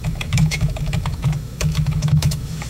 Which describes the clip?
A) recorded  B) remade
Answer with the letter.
B